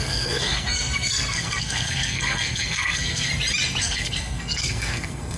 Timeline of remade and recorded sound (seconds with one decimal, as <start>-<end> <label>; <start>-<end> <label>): 0.0-3.3 remade; 3.3-3.8 recorded; 3.8-5.4 remade